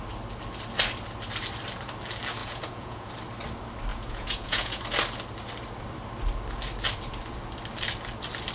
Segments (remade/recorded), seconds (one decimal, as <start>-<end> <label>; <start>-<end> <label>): 0.0-2.4 recorded; 2.4-3.1 remade; 3.1-3.9 recorded; 3.9-4.8 remade; 4.8-8.5 recorded